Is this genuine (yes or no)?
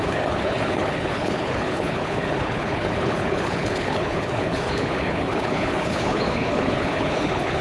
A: no